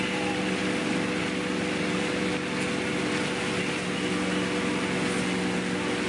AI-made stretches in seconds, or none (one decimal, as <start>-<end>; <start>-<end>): none